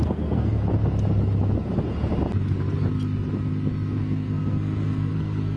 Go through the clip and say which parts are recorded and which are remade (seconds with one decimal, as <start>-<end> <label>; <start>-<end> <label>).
0.0-0.6 remade; 0.6-4.0 recorded; 4.0-5.6 remade